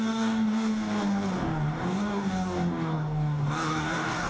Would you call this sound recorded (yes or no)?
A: no